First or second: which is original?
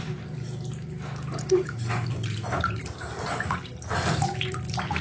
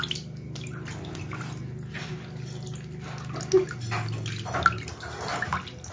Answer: second